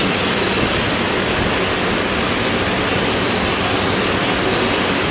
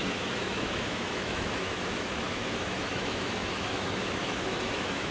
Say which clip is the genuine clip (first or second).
first